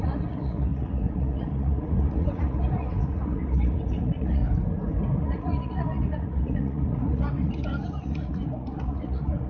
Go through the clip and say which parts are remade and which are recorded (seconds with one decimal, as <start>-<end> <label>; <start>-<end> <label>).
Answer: 0.0-4.4 remade; 4.4-5.2 recorded; 5.2-9.5 remade